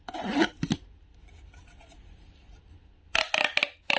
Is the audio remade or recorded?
recorded